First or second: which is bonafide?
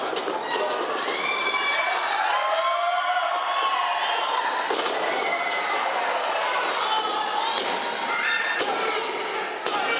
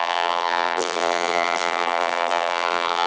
first